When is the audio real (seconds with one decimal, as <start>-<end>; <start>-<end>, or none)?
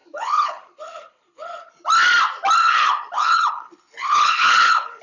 1.7-2.6